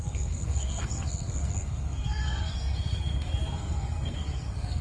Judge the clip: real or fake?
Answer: fake